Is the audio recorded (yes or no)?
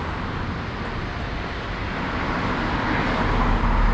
yes